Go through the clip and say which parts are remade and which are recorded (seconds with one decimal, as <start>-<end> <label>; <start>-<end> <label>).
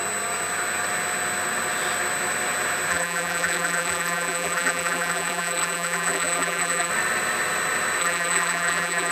0.0-2.9 recorded; 2.9-6.9 remade; 6.9-8.0 recorded; 8.0-9.1 remade